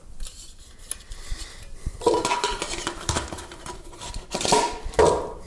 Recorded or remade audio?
remade